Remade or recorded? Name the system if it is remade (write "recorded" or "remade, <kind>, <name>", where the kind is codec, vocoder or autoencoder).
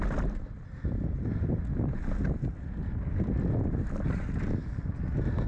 recorded